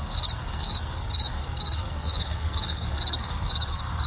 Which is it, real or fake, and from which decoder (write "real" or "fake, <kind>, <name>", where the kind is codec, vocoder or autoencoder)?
fake, codec, SNAC